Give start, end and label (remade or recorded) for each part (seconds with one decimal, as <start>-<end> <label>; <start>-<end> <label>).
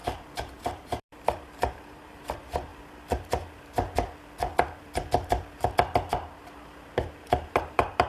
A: 0.0-2.7 remade; 2.7-6.4 recorded; 6.4-8.1 remade